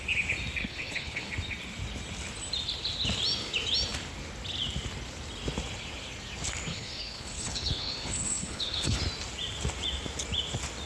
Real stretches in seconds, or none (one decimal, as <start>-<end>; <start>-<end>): 0.0-0.6; 1.3-6.7; 9.0-10.9